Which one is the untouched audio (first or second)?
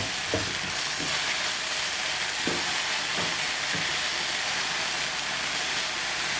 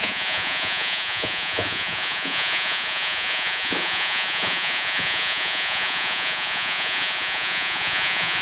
first